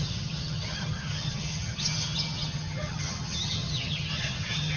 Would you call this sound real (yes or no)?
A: no